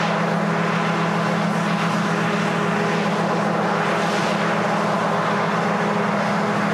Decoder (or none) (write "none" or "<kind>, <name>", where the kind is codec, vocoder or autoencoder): none